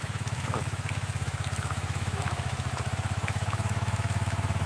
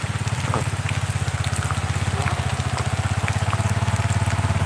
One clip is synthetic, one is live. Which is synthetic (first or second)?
first